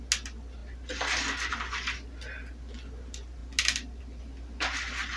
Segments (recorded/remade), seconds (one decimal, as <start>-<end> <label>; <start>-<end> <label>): 0.0-5.2 recorded